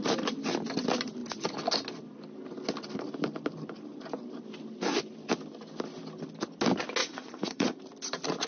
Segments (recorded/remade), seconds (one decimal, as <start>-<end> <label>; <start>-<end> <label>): 0.0-7.0 recorded; 7.0-7.8 remade; 7.8-8.5 recorded